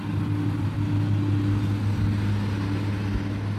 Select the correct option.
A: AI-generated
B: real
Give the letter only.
B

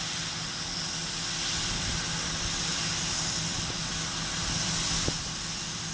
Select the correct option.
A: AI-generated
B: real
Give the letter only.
B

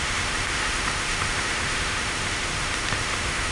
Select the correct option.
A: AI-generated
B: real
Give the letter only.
A